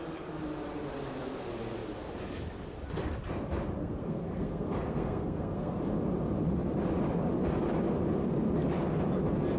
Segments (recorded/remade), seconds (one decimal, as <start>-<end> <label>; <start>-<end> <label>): 0.0-3.8 recorded; 3.8-5.8 remade; 5.8-9.6 recorded